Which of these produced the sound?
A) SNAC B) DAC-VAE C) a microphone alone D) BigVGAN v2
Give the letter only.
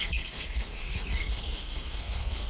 A